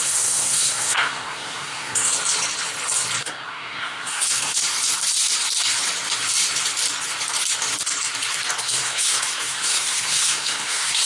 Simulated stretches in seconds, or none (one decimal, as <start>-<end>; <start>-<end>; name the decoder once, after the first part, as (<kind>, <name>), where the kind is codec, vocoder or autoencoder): 0.0-2.1 (codec, SNAC); 3.2-4.6; 8.6-11.1